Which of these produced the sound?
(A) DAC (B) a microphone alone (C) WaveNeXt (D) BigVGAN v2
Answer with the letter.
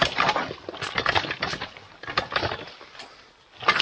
B